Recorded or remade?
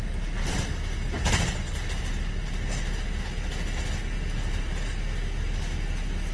recorded